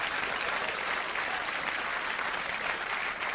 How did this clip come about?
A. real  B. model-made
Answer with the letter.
A